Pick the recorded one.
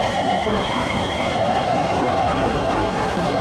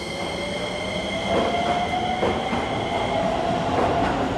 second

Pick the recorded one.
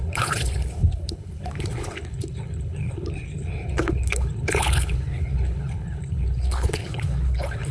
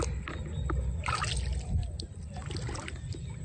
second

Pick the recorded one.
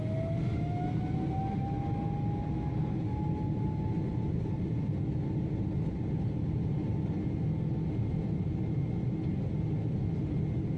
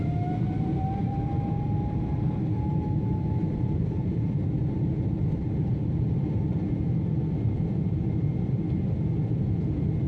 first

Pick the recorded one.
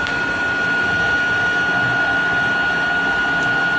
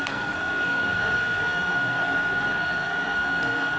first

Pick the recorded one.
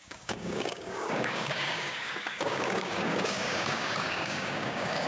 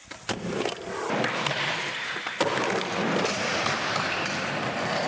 second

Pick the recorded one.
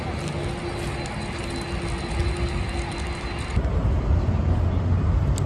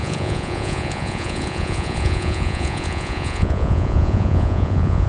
first